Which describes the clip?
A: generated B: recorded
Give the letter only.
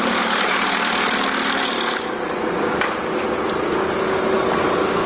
B